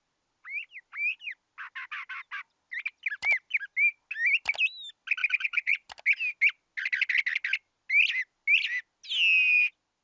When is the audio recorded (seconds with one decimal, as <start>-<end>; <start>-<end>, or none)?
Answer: 0.0-5.2; 5.9-10.0